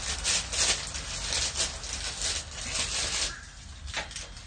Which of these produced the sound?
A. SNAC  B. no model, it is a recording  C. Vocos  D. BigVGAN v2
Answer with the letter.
B